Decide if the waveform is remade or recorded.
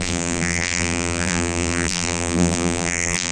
remade